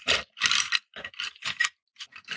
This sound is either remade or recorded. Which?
remade